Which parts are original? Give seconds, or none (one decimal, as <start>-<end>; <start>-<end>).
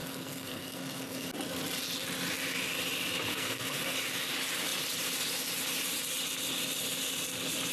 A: 1.3-3.3; 3.8-7.7